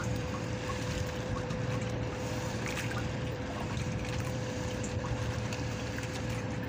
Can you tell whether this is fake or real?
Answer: fake